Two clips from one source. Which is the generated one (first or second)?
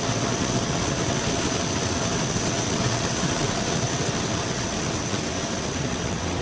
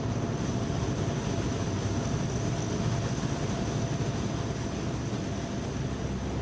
first